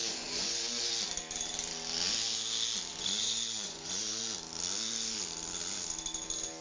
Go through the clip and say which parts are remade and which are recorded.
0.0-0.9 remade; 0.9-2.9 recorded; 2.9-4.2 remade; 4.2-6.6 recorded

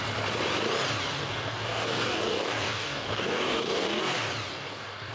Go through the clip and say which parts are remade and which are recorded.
0.0-1.2 recorded; 1.2-4.0 remade; 4.0-4.5 recorded; 4.5-5.1 remade

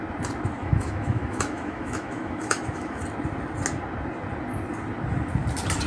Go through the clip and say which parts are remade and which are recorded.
0.0-0.6 recorded; 0.6-3.0 remade; 3.0-5.9 recorded

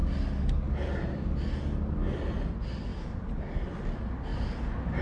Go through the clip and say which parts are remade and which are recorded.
0.0-5.0 recorded

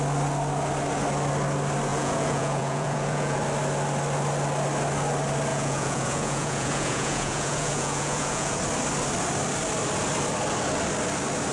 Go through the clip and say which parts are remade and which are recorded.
0.0-1.9 recorded; 1.9-3.4 remade; 3.4-5.5 recorded; 5.5-8.6 remade; 8.6-11.5 recorded